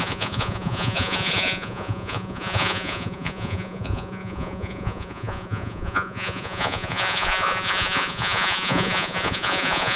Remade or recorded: remade